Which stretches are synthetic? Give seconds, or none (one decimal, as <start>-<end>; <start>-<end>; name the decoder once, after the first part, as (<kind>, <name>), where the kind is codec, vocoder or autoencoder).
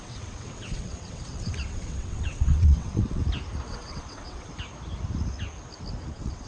0.0-3.2 (vocoder, WaveNeXt); 3.7-4.5; 6.1-6.5